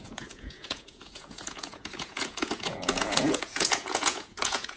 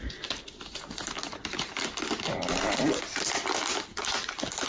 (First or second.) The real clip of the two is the second